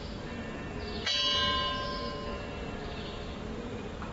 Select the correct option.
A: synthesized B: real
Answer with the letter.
B